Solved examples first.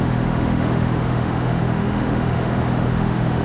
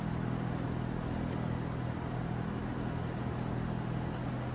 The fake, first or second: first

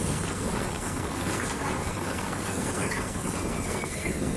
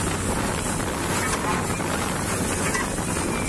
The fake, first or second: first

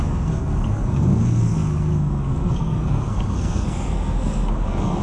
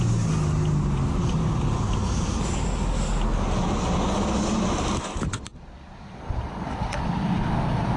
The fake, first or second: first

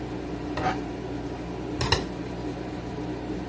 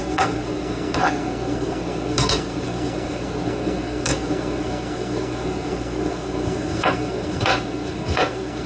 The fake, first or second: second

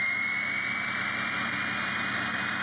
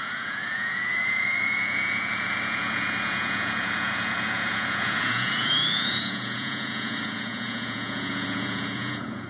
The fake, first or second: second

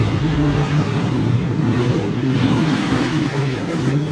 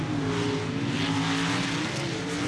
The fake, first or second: first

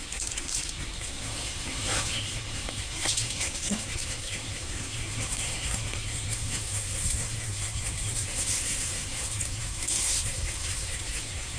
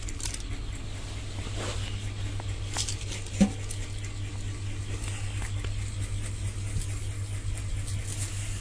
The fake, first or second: first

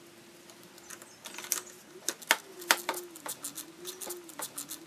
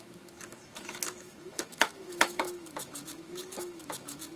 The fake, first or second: second